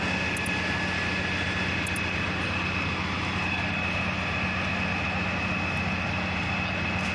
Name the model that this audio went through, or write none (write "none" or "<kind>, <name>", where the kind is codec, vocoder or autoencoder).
none